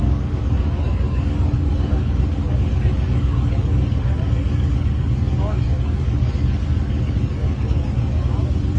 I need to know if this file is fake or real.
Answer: fake